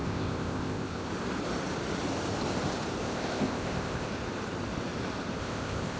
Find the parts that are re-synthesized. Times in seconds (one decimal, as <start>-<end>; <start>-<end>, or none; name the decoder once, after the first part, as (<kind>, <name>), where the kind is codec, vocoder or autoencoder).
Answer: 0.0-1.1 (codec, ZipCodec); 3.0-4.1; 5.4-6.0